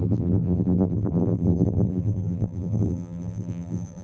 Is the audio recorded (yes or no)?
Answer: no